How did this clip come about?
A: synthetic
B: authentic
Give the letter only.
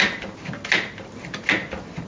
B